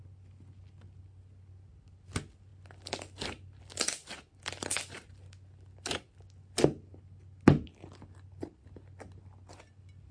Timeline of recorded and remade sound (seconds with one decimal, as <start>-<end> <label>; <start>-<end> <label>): 0.0-10.1 recorded